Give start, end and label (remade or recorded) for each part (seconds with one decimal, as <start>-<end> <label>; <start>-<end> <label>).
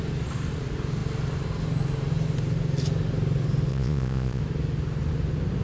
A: 0.0-3.7 recorded; 3.7-4.4 remade; 4.4-5.6 recorded